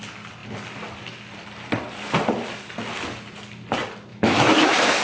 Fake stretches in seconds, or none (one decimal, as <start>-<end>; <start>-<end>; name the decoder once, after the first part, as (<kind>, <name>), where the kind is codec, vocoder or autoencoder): 4.1-5.0 (autoencoder, DAC-VAE)